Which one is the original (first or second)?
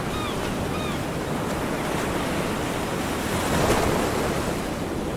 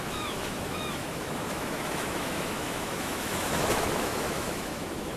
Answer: first